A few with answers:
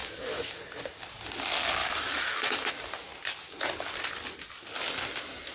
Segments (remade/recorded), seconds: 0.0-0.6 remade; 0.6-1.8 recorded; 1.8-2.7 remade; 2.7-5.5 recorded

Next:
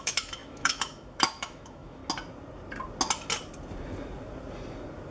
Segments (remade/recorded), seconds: 0.0-2.0 remade; 2.0-5.1 recorded

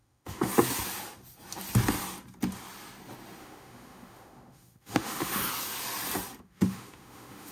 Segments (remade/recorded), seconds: 0.0-0.5 remade; 0.5-3.4 recorded; 3.4-5.4 remade; 5.4-6.4 recorded; 6.4-7.5 remade

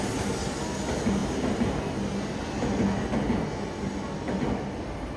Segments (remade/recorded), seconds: 0.0-5.2 recorded